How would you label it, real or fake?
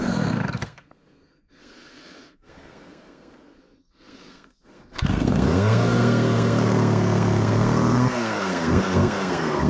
fake